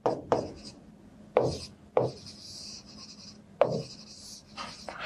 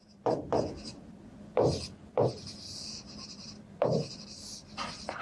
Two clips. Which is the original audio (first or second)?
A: first